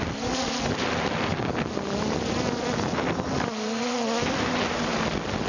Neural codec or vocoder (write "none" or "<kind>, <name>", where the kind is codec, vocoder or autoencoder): none